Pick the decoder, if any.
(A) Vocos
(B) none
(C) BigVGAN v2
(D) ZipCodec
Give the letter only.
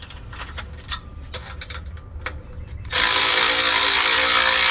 B